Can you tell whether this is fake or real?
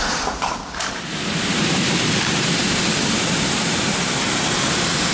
fake